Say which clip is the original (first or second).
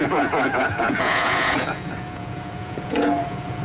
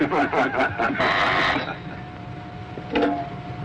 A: second